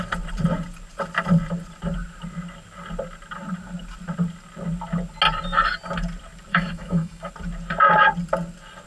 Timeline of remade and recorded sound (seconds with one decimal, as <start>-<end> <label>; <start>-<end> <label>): 0.0-6.5 recorded; 6.5-7.3 remade; 7.3-8.9 recorded